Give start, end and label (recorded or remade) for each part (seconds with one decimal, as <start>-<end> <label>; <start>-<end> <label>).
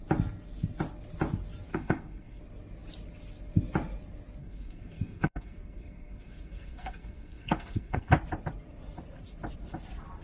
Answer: 0.0-1.7 recorded; 1.7-2.4 remade; 2.4-4.4 recorded; 4.4-8.1 remade; 8.1-10.2 recorded